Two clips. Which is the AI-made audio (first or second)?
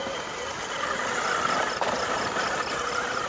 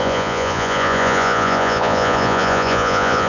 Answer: second